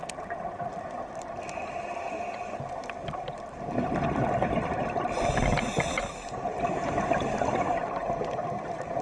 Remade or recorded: recorded